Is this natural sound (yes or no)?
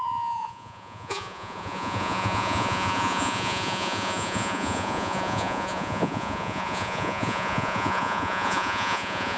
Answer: no